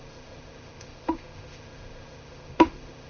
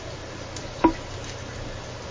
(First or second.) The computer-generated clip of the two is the first